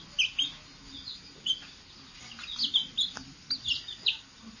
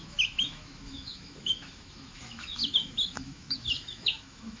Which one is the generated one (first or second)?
second